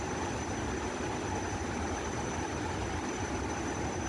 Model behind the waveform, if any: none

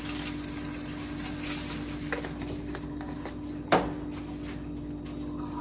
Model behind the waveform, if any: none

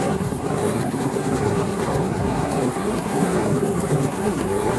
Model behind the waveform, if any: codec, SNAC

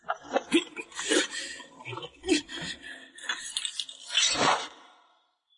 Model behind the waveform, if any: none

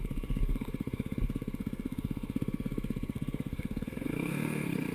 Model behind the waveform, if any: codec, SNAC